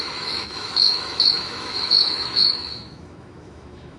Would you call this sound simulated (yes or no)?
yes